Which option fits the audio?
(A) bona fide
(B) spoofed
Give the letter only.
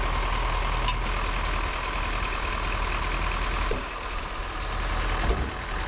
A